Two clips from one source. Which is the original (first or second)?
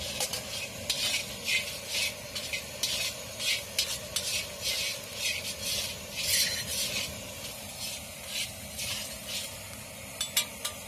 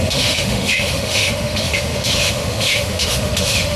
first